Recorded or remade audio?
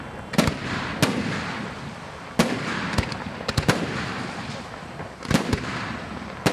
recorded